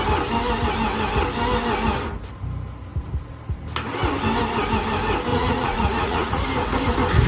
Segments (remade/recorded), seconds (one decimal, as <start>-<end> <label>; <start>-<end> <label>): 0.0-5.3 recorded; 5.3-6.4 remade; 6.4-7.3 recorded